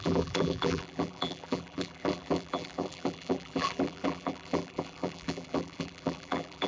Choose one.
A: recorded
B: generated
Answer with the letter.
B